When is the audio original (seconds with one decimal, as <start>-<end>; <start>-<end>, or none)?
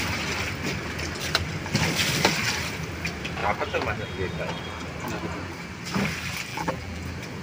0.0-6.5; 7.0-7.4